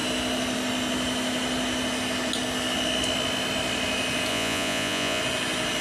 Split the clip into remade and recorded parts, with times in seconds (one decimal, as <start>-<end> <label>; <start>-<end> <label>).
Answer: 0.0-4.3 recorded; 4.3-5.2 remade; 5.2-5.8 recorded